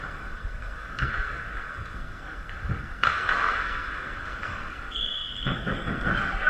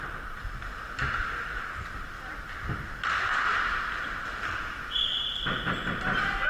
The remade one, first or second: first